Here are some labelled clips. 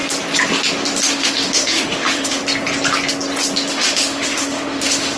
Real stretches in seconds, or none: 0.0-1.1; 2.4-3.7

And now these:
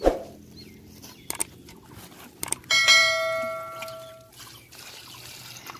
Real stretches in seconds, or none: 0.0-5.8

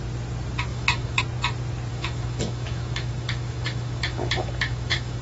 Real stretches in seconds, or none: 0.0-0.7; 1.2-1.9

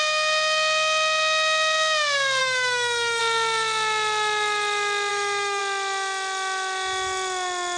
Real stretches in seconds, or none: 0.0-2.4; 3.2-5.1; 5.6-7.8

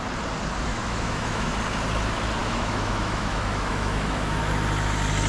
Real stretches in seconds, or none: 0.0-0.7; 1.6-2.4; 4.4-5.3